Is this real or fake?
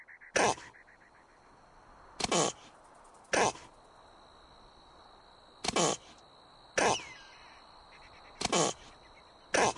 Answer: real